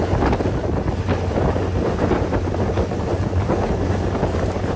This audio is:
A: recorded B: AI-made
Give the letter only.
A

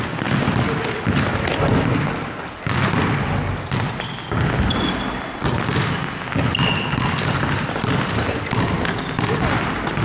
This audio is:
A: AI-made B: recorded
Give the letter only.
B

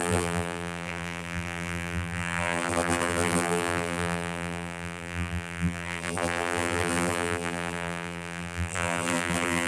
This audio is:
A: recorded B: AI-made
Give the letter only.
B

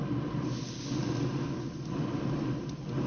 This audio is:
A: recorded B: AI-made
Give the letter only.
A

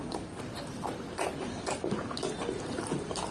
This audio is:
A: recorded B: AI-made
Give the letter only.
A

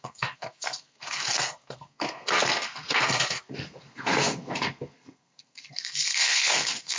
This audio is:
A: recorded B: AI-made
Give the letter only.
B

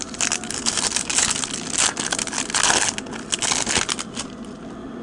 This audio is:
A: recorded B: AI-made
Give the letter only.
A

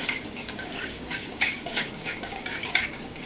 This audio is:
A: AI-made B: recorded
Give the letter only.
A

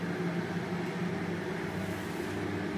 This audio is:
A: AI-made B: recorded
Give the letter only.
B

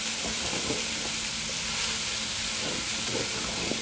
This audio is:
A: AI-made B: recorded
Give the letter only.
B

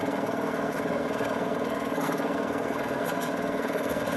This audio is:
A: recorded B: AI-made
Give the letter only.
B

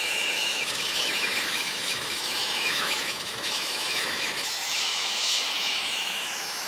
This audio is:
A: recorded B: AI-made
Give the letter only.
B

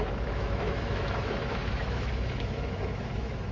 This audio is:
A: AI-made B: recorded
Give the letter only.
A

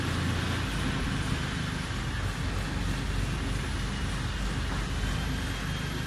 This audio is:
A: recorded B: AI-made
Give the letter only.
A